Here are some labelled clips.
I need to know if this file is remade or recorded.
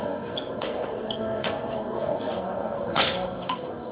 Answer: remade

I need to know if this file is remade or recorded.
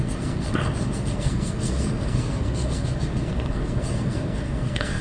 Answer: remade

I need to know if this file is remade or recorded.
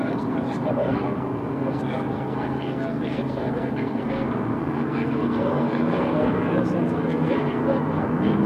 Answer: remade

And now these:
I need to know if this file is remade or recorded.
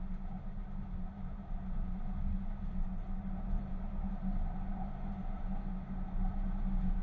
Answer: recorded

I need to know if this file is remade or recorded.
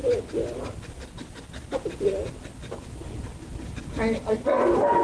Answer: recorded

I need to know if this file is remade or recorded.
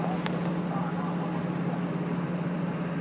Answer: recorded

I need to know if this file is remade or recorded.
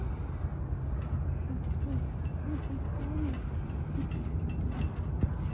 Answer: recorded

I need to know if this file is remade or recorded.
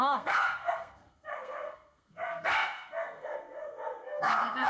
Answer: remade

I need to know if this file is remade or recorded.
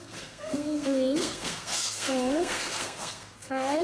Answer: remade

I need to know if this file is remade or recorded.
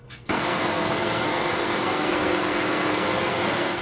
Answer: remade